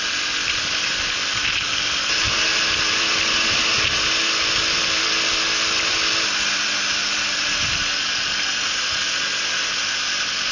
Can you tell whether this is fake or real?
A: fake